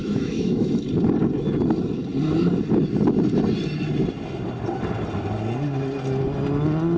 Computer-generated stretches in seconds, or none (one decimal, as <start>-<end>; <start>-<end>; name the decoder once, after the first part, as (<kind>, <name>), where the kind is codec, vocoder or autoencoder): 0.0-0.8 (autoencoder, DAC-VAE)